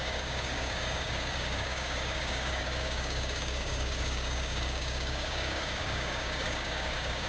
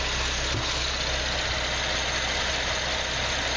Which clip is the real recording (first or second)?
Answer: second